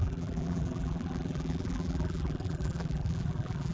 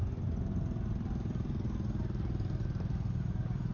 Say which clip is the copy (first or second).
first